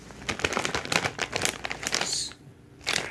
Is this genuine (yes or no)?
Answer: yes